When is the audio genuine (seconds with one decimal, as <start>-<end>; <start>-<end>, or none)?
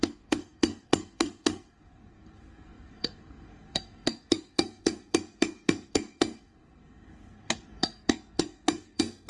none